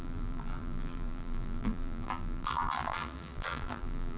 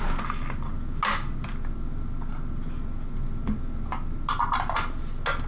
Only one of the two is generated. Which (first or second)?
first